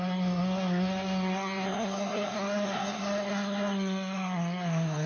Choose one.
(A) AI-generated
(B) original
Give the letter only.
A